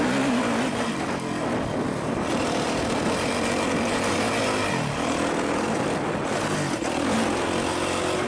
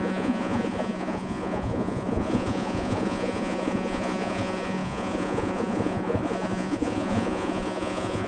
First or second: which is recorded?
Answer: first